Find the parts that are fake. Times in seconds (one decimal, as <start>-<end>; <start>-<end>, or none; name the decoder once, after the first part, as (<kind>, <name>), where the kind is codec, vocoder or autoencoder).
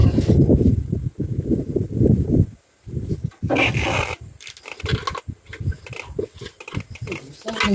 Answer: none